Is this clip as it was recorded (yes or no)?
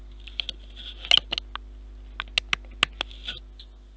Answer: yes